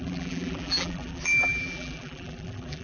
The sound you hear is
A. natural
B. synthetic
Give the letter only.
B